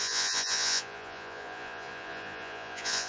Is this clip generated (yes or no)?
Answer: yes